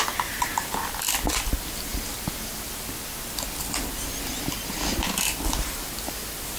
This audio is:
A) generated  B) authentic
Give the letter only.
B